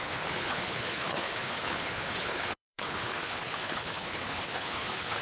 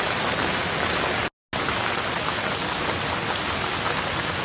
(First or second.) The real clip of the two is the second